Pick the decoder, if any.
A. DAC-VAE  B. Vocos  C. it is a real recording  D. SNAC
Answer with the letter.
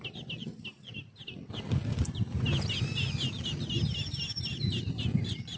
C